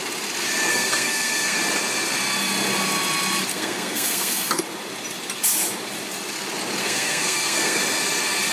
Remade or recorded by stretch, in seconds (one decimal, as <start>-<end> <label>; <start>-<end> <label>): 0.0-0.7 recorded; 0.7-1.6 remade; 1.6-3.5 recorded; 3.5-4.6 remade; 4.6-6.8 recorded; 6.8-8.0 remade; 8.0-8.5 recorded